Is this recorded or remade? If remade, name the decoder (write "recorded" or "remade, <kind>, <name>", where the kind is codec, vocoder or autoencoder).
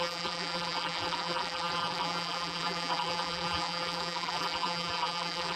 remade, vocoder, BigVGAN v2